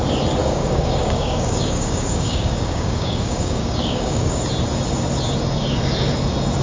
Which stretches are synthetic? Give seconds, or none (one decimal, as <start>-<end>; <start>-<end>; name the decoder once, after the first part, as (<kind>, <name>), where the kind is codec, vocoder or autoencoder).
0.4-4.4 (codec, DAC)